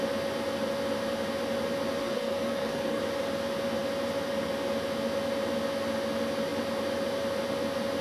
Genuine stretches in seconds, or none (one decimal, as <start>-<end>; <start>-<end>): 0.0-2.0; 3.0-8.0